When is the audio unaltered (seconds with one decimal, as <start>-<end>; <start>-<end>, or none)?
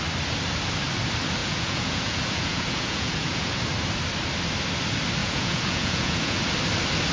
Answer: 0.0-1.4; 3.5-5.2; 6.4-7.1